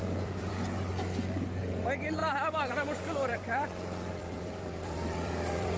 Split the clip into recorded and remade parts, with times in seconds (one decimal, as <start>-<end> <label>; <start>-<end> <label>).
0.0-0.5 remade; 0.5-0.9 recorded; 0.9-1.6 remade; 1.6-2.2 recorded; 2.2-5.8 remade